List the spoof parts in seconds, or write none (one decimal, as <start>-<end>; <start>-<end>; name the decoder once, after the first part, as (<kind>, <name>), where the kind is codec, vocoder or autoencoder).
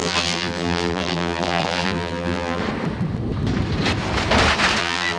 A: 0.0-2.6 (vocoder, BigVGAN v2); 4.8-5.2